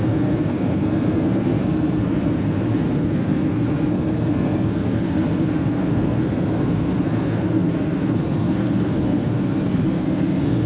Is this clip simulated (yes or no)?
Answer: yes